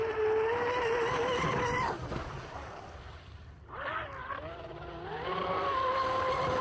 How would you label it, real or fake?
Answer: real